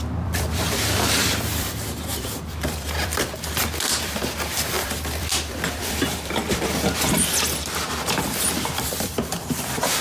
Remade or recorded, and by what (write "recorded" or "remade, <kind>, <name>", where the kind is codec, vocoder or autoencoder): remade, vocoder, BigVGAN v2